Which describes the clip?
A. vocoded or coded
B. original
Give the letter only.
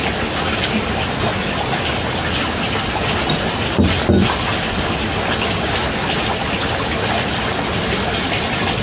B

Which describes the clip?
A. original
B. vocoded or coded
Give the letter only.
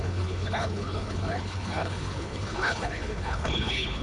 B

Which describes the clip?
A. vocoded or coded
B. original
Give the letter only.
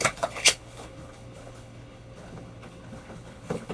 A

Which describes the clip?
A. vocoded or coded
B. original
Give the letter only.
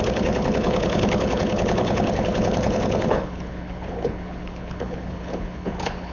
A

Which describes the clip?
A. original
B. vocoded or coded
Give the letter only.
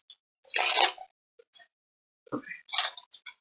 A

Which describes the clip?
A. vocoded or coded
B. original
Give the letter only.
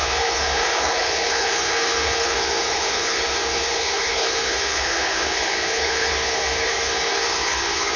A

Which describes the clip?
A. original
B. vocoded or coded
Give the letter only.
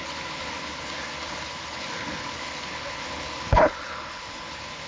B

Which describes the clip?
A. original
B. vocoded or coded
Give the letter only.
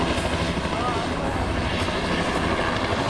A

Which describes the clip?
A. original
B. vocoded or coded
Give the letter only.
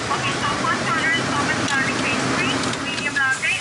A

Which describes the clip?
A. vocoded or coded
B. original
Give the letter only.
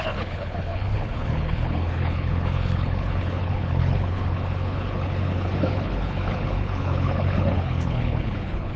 A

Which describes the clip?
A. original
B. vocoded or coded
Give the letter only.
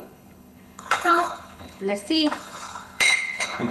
B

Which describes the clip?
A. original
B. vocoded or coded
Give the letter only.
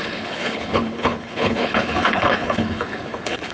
B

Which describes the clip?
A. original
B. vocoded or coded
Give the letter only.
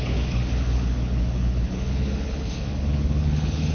B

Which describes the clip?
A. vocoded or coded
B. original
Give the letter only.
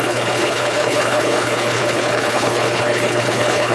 A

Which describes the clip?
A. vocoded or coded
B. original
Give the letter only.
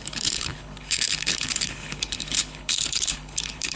A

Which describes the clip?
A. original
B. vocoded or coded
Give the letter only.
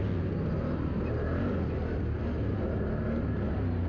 A